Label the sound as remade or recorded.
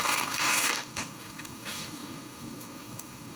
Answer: remade